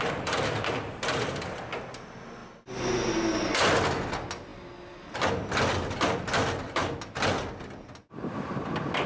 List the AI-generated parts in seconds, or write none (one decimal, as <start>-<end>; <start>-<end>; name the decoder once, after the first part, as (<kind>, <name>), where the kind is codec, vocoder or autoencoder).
none